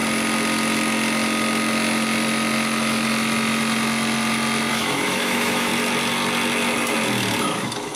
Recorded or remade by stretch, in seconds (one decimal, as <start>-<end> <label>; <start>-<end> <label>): 0.0-4.7 recorded; 4.7-5.7 remade; 5.7-7.4 recorded; 7.4-8.0 remade